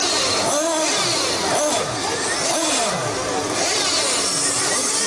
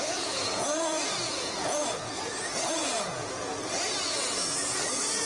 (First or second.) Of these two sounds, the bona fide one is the first